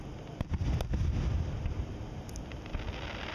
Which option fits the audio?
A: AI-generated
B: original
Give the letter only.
B